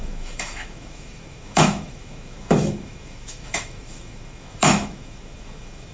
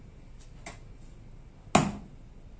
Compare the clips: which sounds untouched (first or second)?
second